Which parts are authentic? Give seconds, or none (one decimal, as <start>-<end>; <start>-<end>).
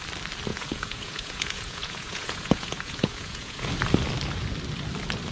0.0-0.5; 3.7-5.3